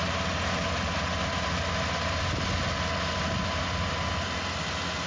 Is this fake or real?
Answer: real